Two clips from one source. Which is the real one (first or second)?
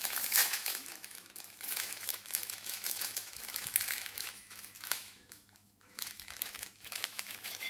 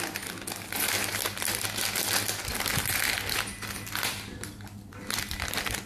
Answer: second